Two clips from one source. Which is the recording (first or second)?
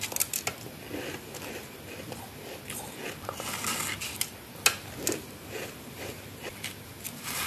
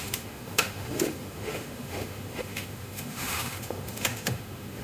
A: first